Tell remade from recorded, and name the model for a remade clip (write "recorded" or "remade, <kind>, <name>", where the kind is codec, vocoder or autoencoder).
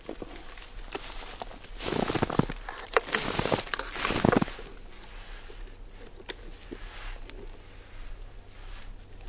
recorded